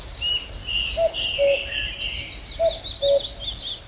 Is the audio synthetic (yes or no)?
no